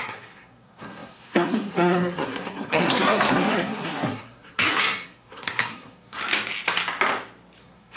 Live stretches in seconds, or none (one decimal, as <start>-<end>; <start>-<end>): 6.2-7.6